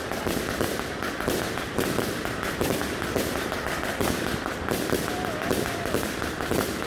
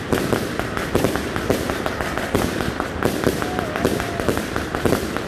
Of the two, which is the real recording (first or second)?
second